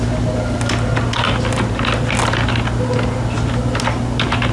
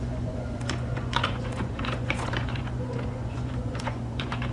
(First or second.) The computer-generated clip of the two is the second